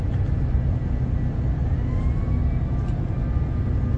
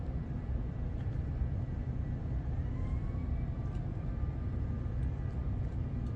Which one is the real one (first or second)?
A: first